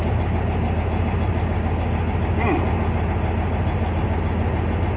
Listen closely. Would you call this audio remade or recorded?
recorded